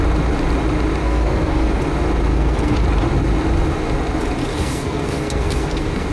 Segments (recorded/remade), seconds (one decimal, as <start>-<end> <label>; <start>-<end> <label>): 0.0-1.0 recorded; 1.0-1.8 remade; 1.8-2.3 recorded; 2.3-2.8 remade; 2.8-4.5 recorded; 4.5-6.1 remade